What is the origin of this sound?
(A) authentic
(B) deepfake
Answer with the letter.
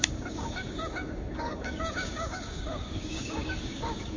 B